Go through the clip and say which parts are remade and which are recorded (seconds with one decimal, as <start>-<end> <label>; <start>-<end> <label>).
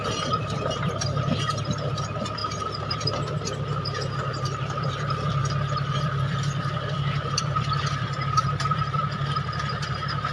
0.0-5.4 remade; 5.4-5.9 recorded; 5.9-10.3 remade